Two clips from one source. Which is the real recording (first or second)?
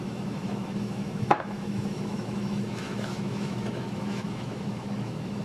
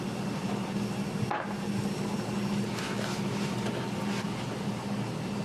second